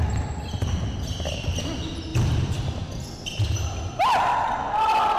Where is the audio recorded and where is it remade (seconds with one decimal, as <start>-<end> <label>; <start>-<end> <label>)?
0.0-5.2 recorded